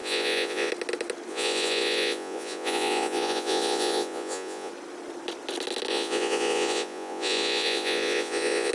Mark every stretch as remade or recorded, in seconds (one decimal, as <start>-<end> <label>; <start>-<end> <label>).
0.0-0.7 remade; 0.7-1.3 recorded; 1.3-4.7 remade; 4.7-5.9 recorded; 5.9-8.7 remade